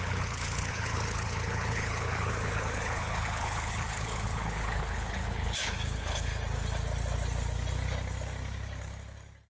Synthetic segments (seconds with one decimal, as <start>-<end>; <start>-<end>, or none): 0.0-6.3